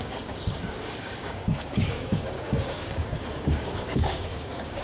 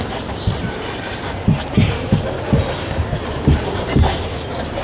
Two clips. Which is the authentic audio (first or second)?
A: second